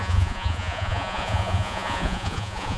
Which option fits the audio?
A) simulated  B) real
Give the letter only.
A